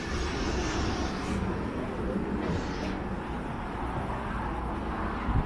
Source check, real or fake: real